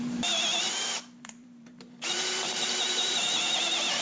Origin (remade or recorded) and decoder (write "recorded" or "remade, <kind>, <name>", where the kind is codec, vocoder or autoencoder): remade, vocoder, BigVGAN v2